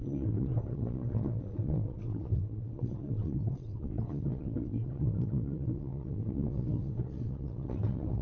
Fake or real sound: fake